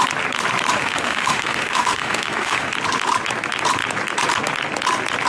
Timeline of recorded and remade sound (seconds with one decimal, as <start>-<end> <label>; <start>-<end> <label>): 0.0-0.8 recorded; 0.8-2.7 remade; 2.7-5.3 recorded